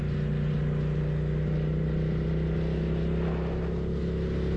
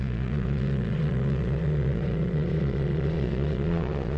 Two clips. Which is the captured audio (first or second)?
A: first